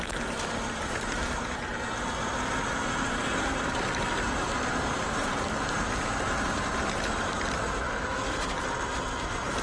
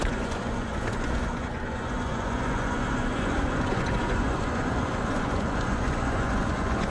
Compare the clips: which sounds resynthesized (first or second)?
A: second